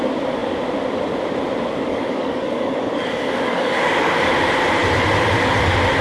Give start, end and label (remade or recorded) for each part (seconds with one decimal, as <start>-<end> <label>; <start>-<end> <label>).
0.0-1.9 recorded; 1.9-4.3 remade; 4.3-6.0 recorded